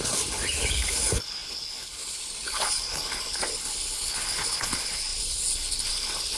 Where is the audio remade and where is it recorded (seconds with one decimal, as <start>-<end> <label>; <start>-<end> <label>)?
0.0-6.4 remade